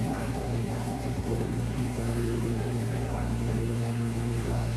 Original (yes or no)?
no